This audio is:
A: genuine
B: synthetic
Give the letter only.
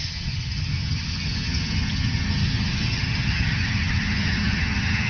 B